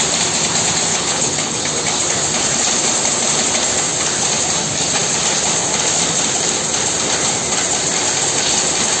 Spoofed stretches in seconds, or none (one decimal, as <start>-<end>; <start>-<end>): 0.9-1.7